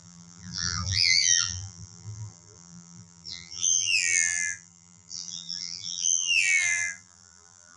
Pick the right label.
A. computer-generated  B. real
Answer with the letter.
A